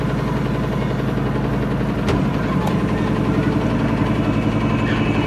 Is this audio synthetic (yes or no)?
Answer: no